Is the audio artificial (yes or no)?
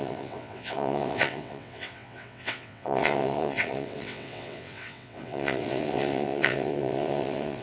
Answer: yes